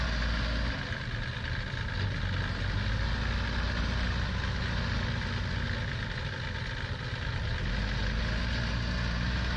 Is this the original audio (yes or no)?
yes